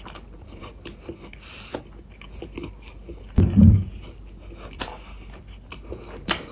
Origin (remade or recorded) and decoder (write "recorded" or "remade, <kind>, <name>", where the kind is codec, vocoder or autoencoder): recorded